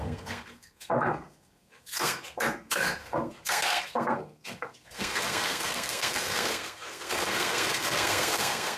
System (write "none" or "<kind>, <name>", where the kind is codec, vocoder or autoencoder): codec, SNAC